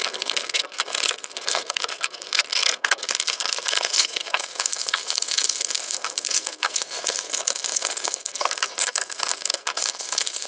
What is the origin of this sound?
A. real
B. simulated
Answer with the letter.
B